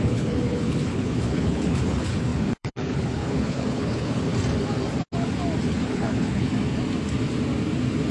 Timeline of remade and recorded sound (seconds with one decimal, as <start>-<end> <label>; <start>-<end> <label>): 0.0-4.3 remade; 4.3-5.7 recorded; 5.7-6.5 remade; 6.5-8.1 recorded